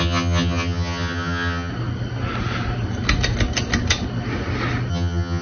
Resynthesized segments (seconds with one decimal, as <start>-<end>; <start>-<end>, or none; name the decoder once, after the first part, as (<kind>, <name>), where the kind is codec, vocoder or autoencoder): 0.0-1.7 (vocoder, HiFi-GAN); 4.9-5.4